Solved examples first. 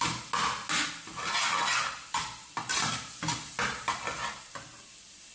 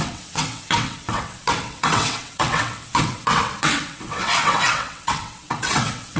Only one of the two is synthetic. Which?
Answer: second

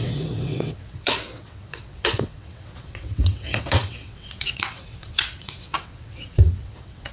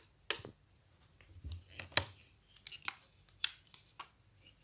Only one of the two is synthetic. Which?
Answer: first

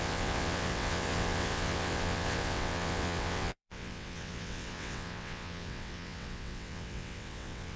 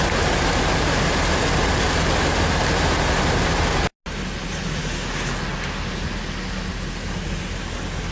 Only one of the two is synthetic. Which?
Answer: first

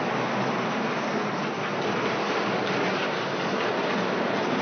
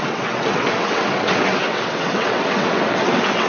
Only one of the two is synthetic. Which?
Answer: second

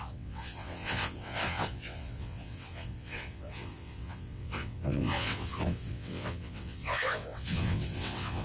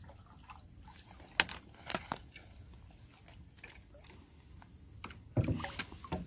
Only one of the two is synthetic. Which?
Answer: first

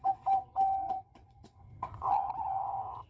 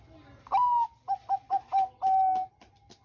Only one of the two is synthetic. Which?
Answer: first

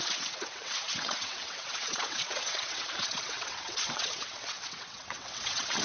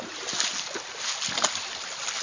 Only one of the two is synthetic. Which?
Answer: first